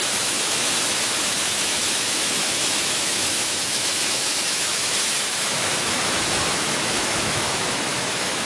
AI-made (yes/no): yes